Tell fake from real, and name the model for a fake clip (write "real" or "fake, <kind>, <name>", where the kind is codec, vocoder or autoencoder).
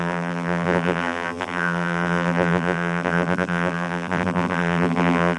fake, vocoder, BigVGAN v2